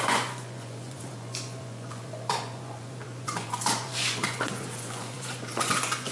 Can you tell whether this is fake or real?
fake